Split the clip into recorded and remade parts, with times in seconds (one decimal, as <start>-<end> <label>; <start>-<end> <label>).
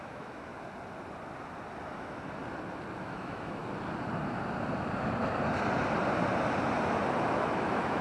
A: 0.0-0.5 remade; 0.5-1.8 recorded; 1.8-2.4 remade; 2.4-3.0 recorded; 3.0-3.6 remade; 3.6-7.3 recorded; 7.3-8.0 remade